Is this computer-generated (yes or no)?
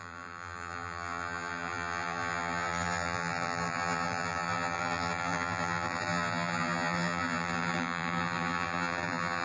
yes